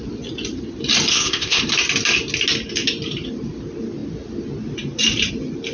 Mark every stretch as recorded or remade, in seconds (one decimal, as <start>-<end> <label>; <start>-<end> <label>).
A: 0.0-1.1 recorded; 1.1-1.6 remade; 1.6-5.7 recorded